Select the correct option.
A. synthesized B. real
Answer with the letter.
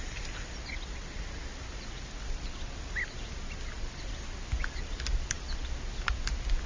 B